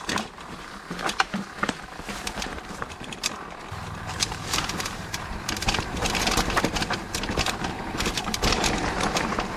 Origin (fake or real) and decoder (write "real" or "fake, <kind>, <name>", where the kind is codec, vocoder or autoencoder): fake, vocoder, BigVGAN v2